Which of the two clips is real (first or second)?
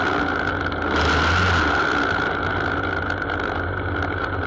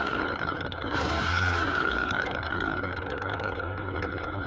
first